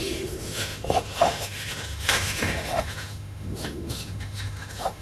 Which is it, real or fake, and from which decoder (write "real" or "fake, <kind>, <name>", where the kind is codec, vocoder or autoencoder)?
fake, autoencoder, DAC-VAE